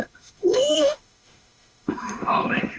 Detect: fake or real fake